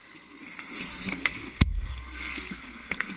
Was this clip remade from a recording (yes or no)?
yes